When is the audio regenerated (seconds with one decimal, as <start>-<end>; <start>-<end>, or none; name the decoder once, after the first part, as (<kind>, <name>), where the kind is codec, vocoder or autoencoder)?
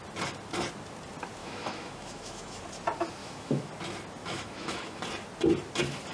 1.4-2.6 (autoencoder, DAC-VAE); 3.2-3.7; 4.2-5.0